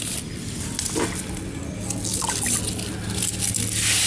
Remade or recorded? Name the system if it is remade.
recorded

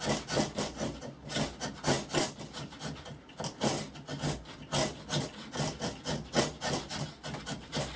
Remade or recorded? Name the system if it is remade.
recorded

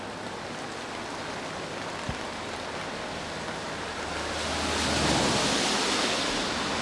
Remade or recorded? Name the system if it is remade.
recorded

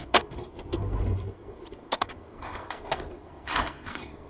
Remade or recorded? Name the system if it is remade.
remade, codec, SNAC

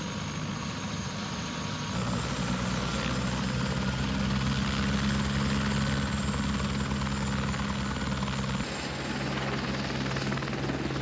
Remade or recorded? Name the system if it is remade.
recorded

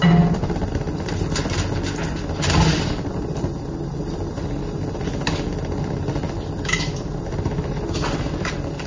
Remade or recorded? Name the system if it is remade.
recorded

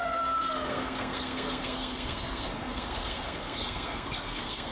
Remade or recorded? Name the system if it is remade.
remade, codec, SNAC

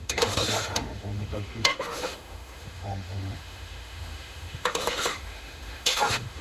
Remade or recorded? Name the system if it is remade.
remade, autoencoder, DAC-VAE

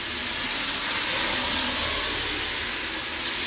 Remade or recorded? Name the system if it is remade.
recorded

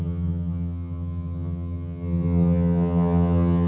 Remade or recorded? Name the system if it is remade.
remade, vocoder, HiFi-GAN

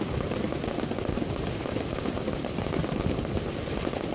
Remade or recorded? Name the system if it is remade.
recorded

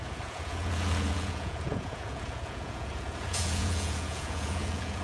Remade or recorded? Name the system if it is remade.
remade, vocoder, Vocos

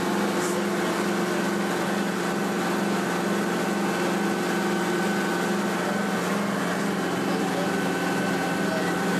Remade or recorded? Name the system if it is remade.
recorded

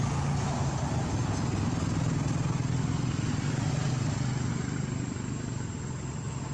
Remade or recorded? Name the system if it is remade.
recorded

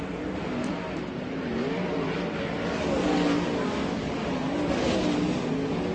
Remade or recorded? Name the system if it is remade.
recorded